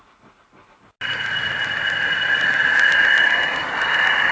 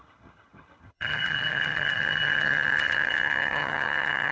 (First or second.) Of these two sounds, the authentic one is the first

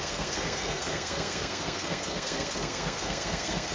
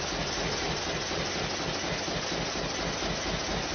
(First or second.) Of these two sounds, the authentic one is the second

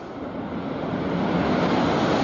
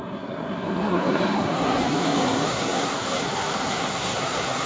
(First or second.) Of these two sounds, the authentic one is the first